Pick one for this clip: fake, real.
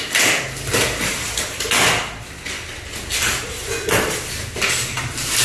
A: real